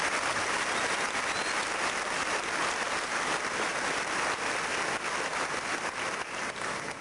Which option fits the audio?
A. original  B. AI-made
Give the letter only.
A